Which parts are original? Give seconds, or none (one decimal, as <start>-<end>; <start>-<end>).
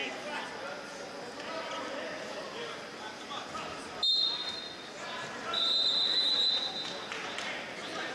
0.0-8.1